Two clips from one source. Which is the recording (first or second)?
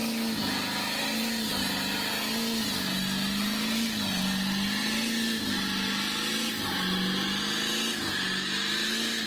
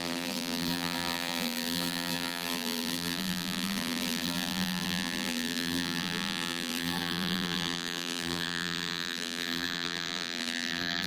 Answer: first